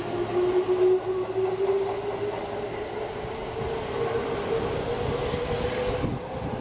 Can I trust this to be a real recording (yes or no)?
yes